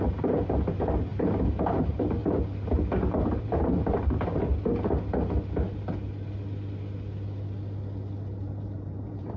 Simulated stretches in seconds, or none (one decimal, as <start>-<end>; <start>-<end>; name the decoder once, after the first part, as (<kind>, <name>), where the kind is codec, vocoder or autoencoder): 0.0-1.1 (vocoder, BigVGAN v2); 1.6-2.2; 3.4-4.5; 8.3-9.4